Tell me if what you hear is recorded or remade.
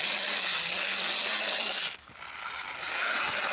recorded